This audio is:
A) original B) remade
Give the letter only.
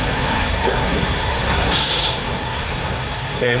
B